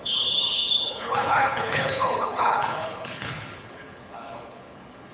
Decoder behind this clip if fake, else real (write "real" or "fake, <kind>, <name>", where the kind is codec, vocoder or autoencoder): fake, codec, HILCodec